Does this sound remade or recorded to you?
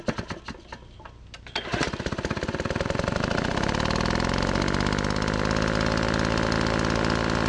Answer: recorded